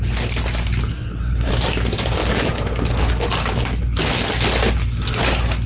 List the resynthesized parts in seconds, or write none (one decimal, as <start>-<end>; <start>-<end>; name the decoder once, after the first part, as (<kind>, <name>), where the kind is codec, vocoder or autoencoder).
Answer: 0.9-1.5 (codec, SNAC)